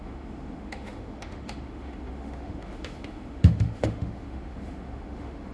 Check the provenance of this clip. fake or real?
fake